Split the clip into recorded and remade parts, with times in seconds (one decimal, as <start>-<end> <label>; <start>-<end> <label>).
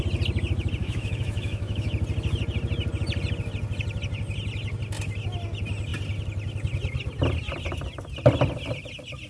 0.0-0.8 recorded; 0.8-1.9 remade; 1.9-9.3 recorded